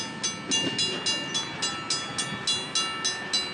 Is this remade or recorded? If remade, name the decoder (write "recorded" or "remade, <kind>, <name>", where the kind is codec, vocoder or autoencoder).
recorded